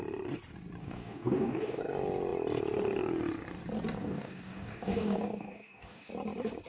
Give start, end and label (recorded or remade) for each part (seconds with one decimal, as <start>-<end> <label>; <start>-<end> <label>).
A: 0.0-0.8 recorded; 0.8-1.8 remade; 1.8-4.0 recorded; 4.0-6.1 remade; 6.1-6.7 recorded